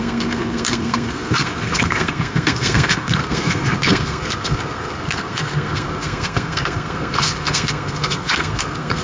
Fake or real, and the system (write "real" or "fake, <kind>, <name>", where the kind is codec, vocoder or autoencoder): fake, codec, SNAC